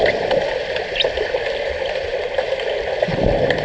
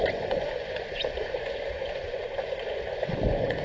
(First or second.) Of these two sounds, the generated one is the second